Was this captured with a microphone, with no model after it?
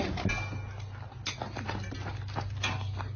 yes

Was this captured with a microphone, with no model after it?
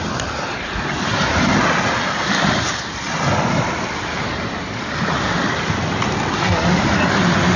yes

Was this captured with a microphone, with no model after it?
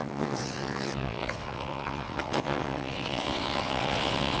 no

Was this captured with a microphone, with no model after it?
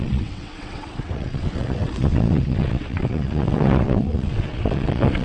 no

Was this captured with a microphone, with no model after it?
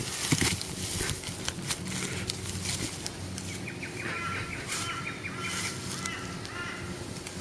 yes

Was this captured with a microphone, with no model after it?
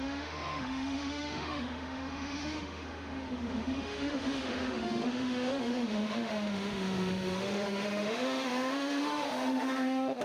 no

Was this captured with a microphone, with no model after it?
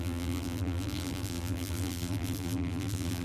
no